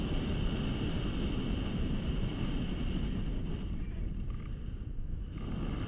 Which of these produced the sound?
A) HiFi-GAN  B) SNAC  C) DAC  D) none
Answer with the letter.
D